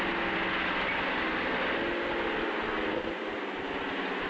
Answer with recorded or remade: recorded